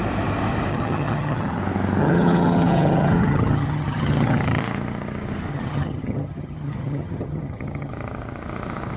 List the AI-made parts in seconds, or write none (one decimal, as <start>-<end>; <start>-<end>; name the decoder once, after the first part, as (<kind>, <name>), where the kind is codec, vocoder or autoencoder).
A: 0.7-1.6 (vocoder, HiFi-GAN); 2.0-4.6; 5.5-7.9